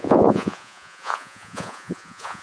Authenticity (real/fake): fake